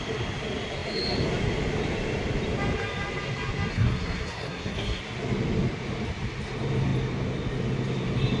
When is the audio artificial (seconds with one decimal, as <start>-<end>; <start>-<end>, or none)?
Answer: 3.7-5.0